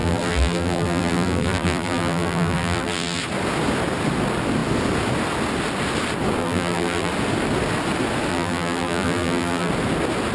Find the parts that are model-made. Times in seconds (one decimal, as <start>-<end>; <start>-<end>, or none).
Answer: 0.0-3.2; 6.4-7.1; 8.3-9.7